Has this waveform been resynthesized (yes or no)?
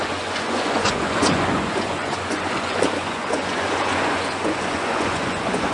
yes